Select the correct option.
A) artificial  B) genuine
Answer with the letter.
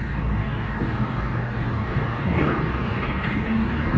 A